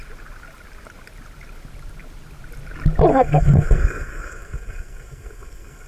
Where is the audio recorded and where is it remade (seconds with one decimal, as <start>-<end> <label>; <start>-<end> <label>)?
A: 0.0-3.1 recorded; 3.1-5.9 remade